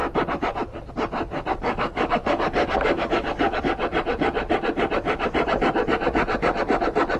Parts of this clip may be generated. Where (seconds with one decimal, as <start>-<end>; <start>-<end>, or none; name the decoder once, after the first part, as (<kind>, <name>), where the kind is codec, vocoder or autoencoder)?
1.5-3.6 (codec, DAC)